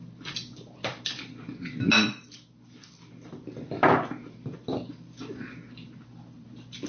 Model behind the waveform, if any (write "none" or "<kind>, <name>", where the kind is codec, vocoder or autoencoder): none